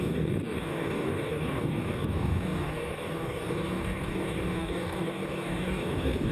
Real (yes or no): no